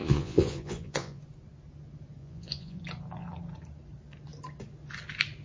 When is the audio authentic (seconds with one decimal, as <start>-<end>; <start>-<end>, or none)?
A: 1.2-2.2; 2.8-5.4